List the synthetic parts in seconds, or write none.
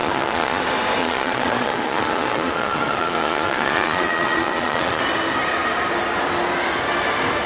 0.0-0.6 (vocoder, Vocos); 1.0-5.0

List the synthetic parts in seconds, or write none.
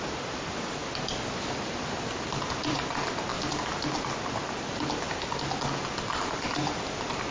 none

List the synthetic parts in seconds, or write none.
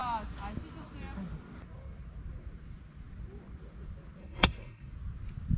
4.2-4.9 (codec, SNAC)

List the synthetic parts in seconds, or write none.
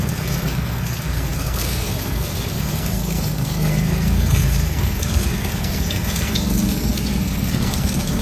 0.0-8.2 (codec, SNAC)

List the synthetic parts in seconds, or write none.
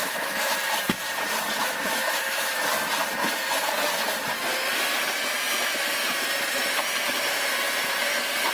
0.0-0.5 (autoencoder, DAC-VAE); 1.6-2.6